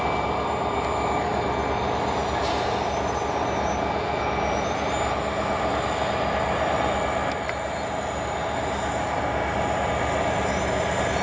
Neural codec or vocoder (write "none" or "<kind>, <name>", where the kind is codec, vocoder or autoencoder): none